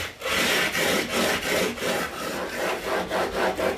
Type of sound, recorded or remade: recorded